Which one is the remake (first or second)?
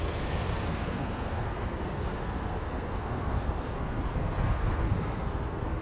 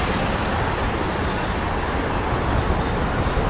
first